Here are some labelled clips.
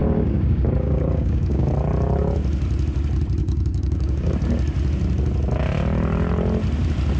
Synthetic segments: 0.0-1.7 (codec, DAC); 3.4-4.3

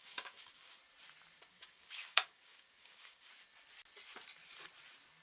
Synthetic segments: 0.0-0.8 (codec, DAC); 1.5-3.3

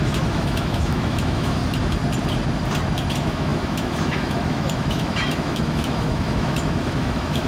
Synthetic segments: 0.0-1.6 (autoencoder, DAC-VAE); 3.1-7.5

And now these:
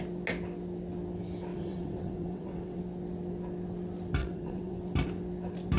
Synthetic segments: 1.5-2.8 (vocoder, WaveNeXt); 4.2-4.8

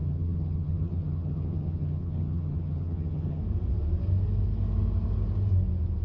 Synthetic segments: 0.0-3.4 (vocoder, HiFi-GAN)